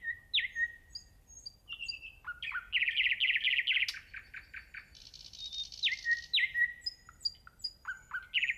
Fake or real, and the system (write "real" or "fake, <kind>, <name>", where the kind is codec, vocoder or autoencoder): real